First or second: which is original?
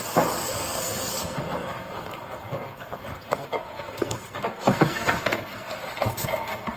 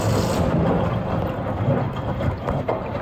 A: second